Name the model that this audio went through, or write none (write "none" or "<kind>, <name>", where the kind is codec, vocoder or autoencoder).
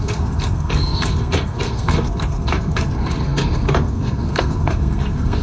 codec, SNAC